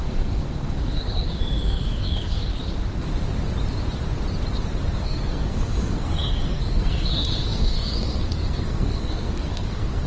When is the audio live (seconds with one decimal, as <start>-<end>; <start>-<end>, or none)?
2.5-5.0